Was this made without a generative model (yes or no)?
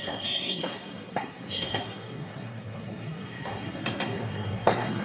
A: no